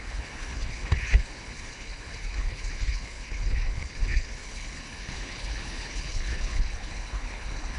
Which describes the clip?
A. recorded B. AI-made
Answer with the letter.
B